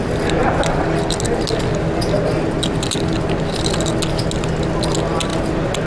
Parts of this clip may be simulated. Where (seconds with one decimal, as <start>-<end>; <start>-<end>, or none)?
none